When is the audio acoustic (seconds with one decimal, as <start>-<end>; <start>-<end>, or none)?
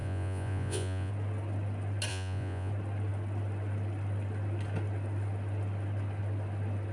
1.1-2.1; 2.7-6.9